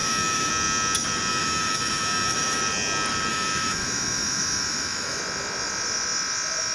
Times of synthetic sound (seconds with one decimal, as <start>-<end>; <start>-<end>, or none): 0.0-0.5; 1.3-2.6; 3.3-5.2